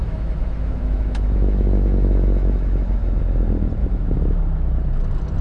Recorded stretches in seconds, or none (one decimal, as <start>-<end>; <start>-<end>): 3.2-3.8; 4.4-5.4